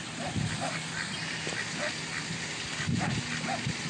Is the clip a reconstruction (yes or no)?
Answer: no